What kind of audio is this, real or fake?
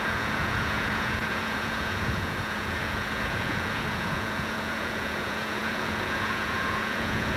fake